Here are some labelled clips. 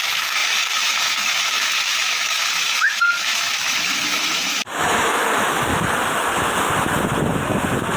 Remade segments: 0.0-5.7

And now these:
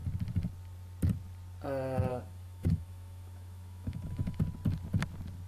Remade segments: 2.1-4.4

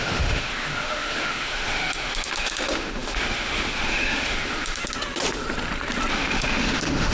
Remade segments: 0.0-4.8; 6.1-7.1

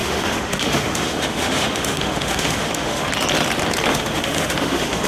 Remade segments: 0.0-3.1; 3.9-5.1

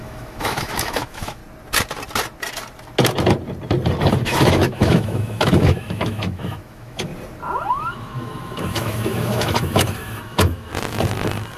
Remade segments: 0.0-1.4; 4.2-7.1; 7.7-10.7

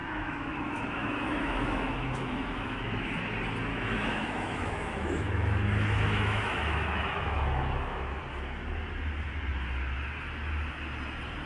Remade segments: 0.0-3.2; 3.7-8.2